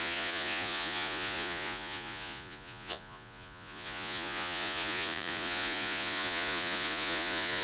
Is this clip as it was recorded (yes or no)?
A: no